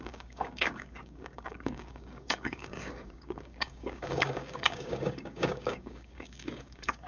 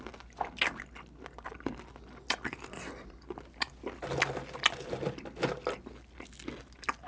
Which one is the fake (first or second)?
first